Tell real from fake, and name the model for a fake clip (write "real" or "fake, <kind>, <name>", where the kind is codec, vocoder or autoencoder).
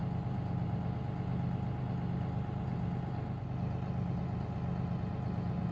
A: real